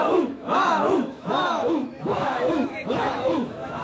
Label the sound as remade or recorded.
remade